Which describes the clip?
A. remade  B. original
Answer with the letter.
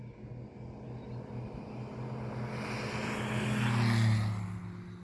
B